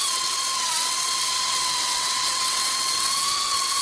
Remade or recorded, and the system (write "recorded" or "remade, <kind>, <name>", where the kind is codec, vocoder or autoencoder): remade, vocoder, WaveNeXt